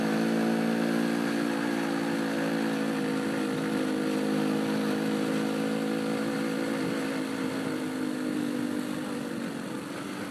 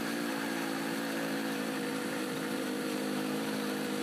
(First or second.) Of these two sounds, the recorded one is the first